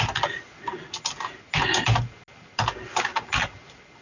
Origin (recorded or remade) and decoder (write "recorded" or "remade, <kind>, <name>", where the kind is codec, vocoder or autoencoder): recorded